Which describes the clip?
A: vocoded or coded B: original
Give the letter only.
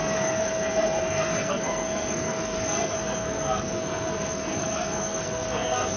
A